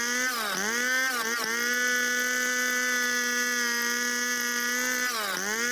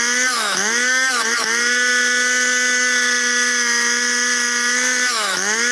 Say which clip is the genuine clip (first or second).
first